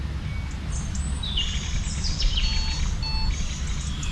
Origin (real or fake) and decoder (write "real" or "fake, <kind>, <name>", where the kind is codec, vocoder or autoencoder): real